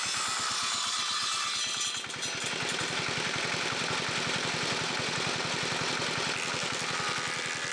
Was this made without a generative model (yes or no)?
yes